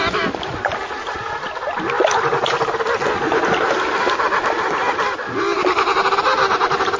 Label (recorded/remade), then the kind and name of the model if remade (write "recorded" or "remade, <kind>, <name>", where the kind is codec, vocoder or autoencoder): recorded